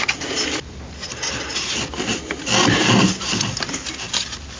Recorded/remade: recorded